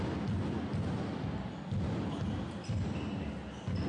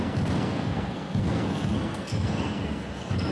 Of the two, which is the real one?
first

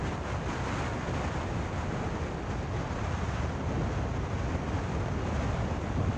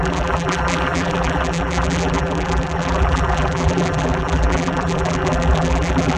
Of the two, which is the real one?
first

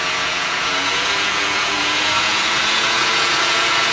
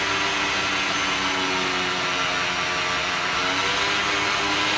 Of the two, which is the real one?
second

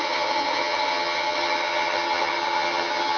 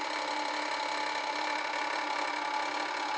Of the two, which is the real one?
second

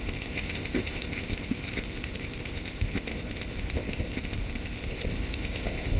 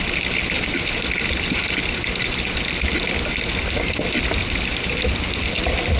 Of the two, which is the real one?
second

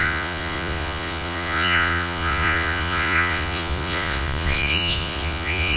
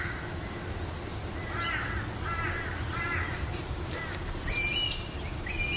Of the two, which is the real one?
second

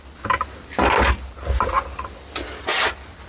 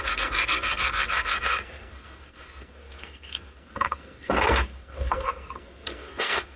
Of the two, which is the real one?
first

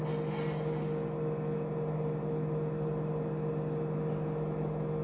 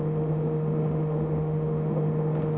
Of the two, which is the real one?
first